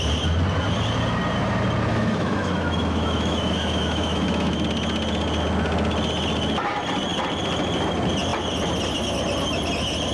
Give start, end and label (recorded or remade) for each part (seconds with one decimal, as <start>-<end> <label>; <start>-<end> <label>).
0.0-1.9 recorded; 1.9-4.6 remade; 4.6-10.1 recorded